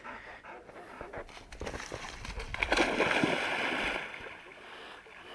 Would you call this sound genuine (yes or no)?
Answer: yes